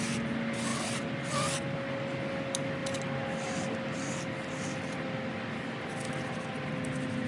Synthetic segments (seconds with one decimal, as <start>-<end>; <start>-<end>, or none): none